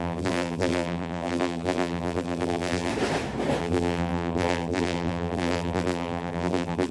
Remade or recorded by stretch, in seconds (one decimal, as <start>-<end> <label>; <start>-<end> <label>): 0.0-2.9 remade; 2.9-3.6 recorded; 3.6-6.9 remade